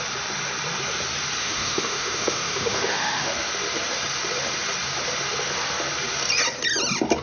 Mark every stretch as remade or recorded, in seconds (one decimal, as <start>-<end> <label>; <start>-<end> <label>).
0.0-1.4 recorded; 1.4-3.3 remade; 3.3-7.2 recorded